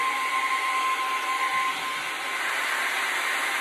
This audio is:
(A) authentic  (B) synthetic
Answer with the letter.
A